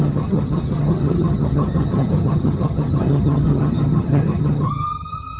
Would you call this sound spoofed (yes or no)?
yes